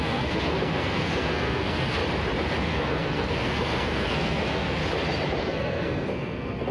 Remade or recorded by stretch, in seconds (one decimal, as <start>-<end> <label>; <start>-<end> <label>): 0.0-2.0 remade; 2.0-2.6 recorded; 2.6-4.8 remade; 4.8-5.4 recorded; 5.4-6.7 remade